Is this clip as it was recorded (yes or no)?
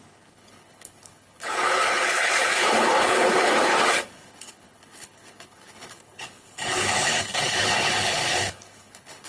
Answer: no